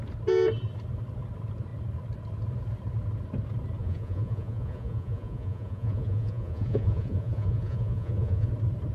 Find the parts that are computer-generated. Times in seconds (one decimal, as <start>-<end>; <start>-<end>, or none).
3.8-8.5